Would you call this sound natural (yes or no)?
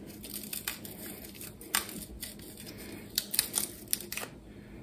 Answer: yes